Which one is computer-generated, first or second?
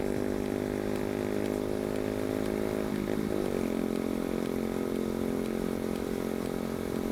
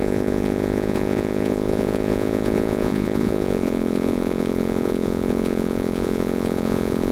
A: second